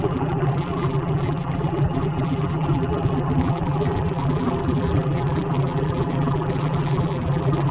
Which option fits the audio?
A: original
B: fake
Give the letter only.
B